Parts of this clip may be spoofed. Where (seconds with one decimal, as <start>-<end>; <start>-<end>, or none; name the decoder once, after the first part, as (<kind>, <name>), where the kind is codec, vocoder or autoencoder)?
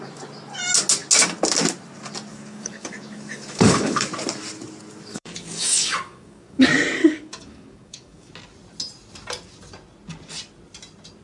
2.3-4.1 (codec, DAC); 5.1-6.6; 7.0-8.3